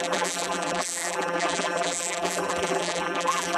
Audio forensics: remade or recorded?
remade